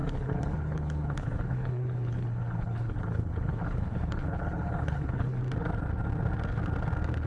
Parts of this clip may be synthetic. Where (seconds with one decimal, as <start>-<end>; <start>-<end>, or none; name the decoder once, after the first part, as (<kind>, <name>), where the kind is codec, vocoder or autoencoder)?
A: 0.0-5.4 (codec, HILCodec)